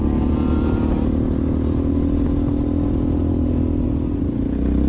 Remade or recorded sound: recorded